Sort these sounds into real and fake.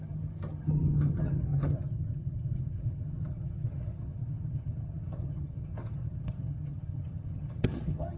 fake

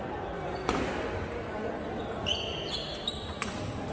real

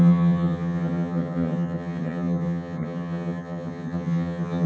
fake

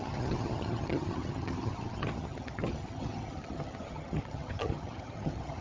fake